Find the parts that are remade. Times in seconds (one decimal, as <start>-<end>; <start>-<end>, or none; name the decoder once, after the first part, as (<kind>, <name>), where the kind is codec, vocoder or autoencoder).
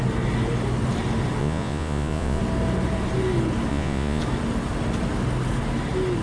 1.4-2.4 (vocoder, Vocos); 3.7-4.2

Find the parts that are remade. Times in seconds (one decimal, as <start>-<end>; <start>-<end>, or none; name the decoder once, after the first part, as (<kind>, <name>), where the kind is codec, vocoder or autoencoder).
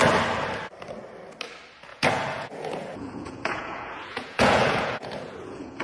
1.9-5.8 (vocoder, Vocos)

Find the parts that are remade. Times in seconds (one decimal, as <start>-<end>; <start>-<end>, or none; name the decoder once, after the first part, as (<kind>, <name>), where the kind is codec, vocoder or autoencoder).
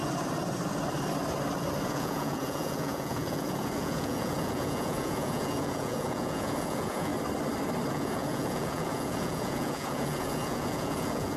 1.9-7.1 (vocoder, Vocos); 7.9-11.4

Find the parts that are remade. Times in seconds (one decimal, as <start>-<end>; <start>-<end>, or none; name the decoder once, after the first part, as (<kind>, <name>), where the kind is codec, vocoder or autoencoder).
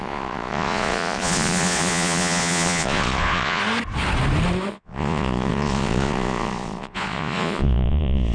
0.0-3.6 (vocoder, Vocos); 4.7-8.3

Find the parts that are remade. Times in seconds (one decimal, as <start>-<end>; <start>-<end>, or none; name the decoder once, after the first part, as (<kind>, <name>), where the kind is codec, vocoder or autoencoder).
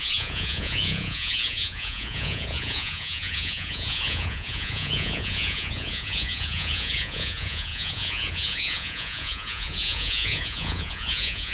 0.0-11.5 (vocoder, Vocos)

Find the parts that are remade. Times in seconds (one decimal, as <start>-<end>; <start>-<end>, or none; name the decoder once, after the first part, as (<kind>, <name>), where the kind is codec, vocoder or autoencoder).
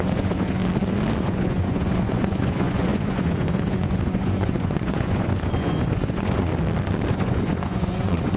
0.0-0.6 (vocoder, Vocos); 1.2-6.5; 7.1-8.4